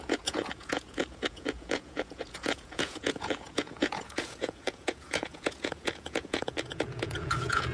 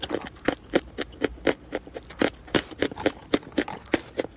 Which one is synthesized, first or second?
first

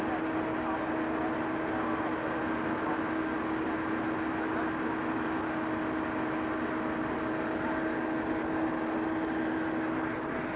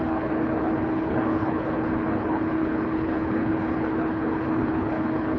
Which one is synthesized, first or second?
second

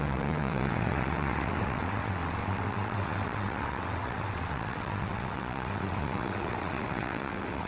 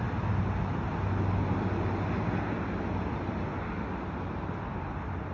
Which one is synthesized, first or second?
first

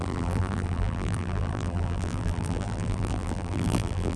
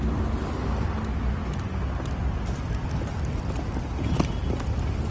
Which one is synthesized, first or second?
first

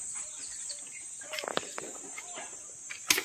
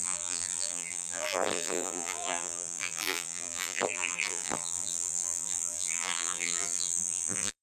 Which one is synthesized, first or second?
second